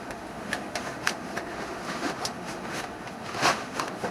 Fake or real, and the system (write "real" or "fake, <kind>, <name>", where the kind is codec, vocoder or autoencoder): fake, autoencoder, DAC-VAE